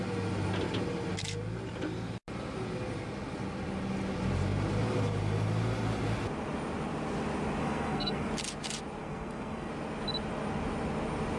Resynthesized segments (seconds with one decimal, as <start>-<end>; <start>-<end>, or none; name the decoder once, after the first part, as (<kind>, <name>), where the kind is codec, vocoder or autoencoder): 7.6-8.3 (codec, SNAC); 9.0-9.7